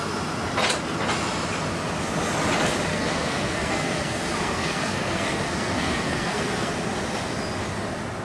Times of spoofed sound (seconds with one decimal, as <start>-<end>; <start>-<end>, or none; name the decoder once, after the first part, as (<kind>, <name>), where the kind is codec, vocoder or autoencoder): 2.9-6.7 (codec, SNAC)